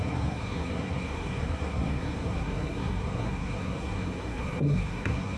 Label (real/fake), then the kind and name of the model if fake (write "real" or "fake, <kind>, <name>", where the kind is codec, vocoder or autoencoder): fake, codec, SNAC